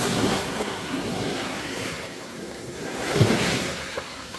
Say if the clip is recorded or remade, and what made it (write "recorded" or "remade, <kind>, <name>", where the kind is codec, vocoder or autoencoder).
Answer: remade, codec, SNAC